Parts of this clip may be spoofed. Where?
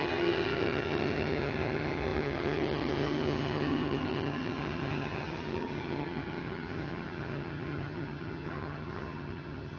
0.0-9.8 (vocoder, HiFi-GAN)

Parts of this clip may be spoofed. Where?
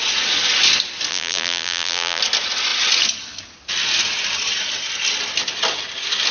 1.1-2.2 (vocoder, BigVGAN v2)